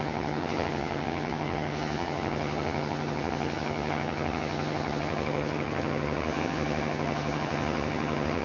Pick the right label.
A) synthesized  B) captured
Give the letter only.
A